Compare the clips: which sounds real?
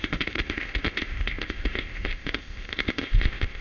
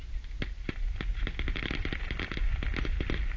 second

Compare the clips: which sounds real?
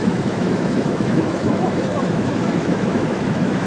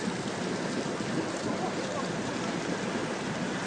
second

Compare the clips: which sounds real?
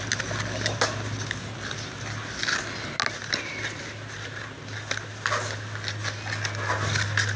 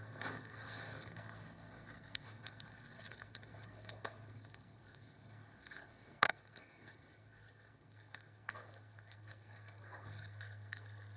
first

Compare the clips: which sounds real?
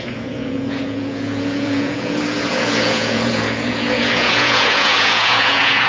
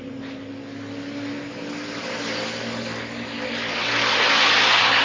second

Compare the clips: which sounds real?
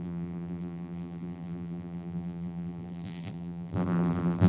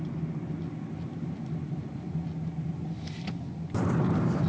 second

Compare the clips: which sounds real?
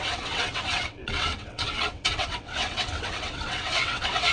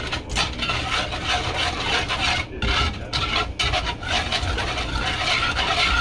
second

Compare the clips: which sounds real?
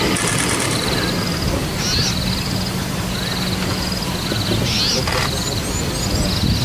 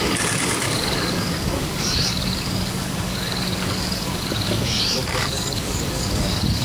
first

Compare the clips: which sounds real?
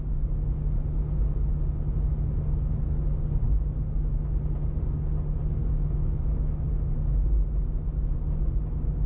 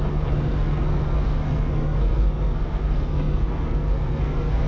first